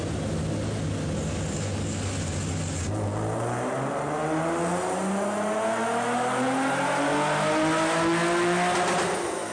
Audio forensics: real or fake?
real